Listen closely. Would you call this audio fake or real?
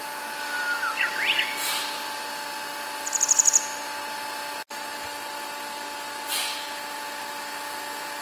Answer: real